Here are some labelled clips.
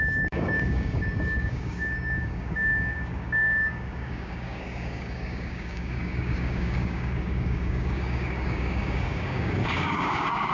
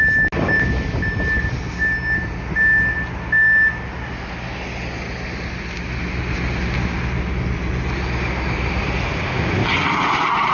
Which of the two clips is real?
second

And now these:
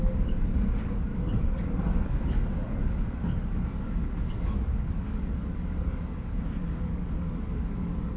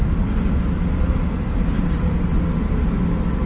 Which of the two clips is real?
second